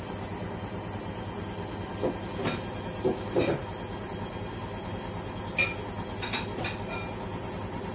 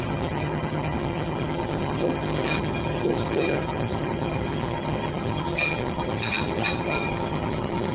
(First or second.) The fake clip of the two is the second